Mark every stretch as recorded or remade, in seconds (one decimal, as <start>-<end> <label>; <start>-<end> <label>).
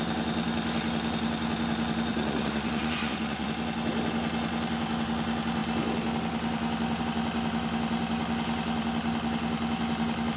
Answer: 0.0-2.1 recorded; 2.1-3.5 remade; 3.5-10.4 recorded